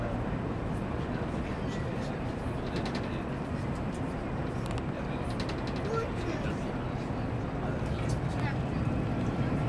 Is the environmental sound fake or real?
real